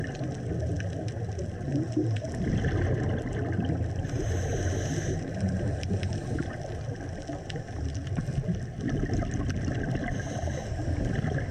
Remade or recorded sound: recorded